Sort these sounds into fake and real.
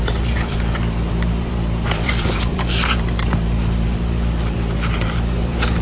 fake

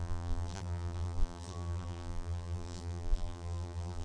fake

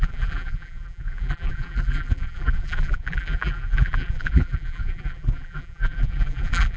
fake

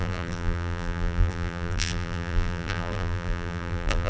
fake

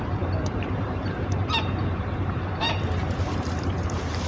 fake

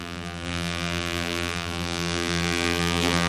fake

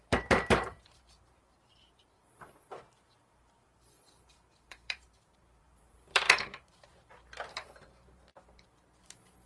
fake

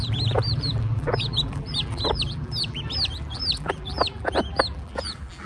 fake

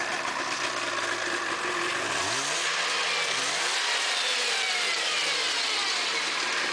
real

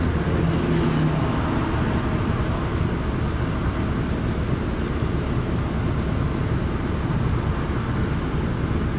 real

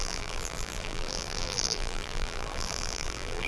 fake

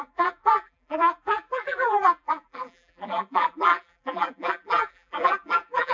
fake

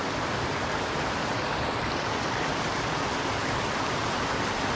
real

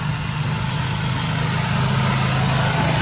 real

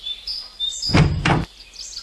fake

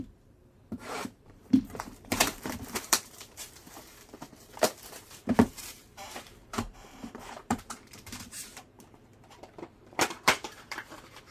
fake